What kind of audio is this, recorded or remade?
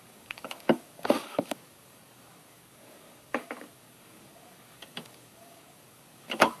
remade